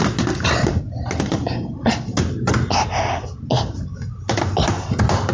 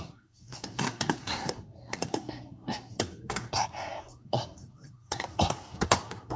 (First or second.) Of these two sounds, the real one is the first